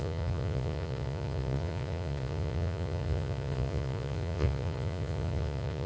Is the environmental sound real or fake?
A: fake